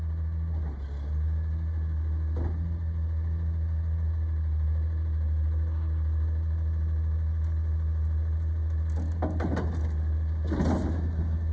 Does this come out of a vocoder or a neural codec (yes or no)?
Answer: no